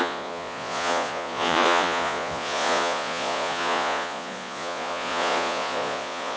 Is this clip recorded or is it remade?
remade